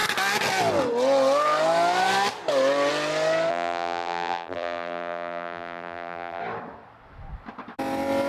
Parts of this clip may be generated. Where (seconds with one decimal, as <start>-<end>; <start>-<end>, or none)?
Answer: 3.5-6.4